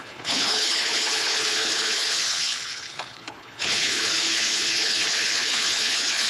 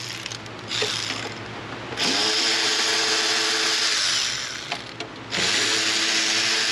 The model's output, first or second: first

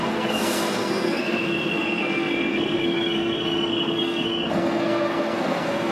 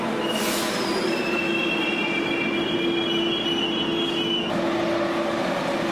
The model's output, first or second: first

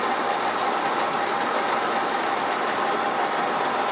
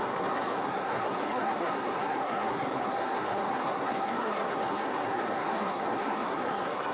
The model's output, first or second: second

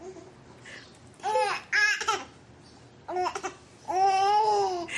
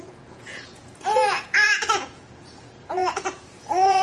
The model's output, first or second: second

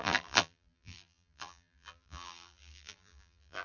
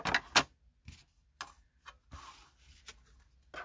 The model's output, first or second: first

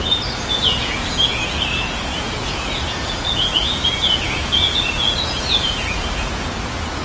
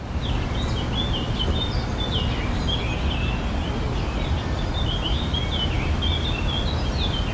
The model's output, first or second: first